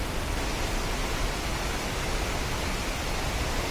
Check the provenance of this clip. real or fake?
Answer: real